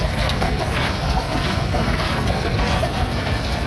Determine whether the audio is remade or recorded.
remade